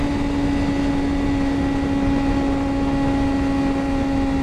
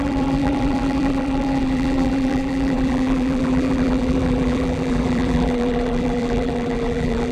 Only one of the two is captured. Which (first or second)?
first